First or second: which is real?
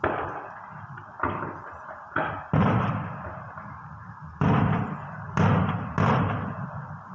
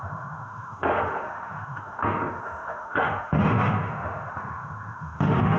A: first